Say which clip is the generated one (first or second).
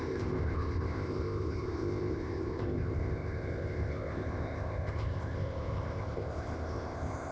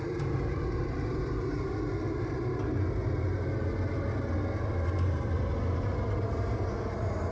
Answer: first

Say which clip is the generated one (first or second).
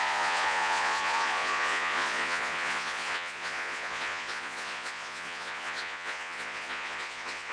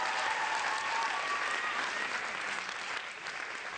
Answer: first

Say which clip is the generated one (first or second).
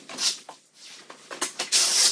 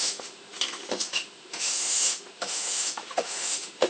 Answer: second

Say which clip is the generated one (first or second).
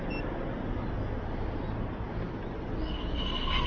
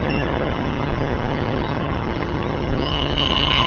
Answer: second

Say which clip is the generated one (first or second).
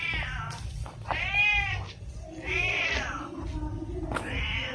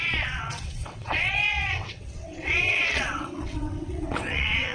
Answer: second